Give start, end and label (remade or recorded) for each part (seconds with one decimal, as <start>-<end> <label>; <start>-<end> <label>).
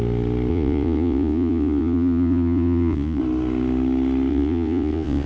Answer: 0.0-0.5 recorded; 0.5-3.2 remade; 3.2-4.3 recorded; 4.3-5.3 remade